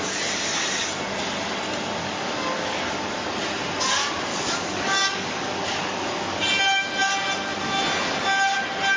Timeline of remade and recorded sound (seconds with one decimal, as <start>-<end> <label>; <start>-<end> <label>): 0.0-2.0 recorded; 2.0-3.1 remade; 3.1-4.3 recorded; 4.3-6.6 remade; 6.6-9.0 recorded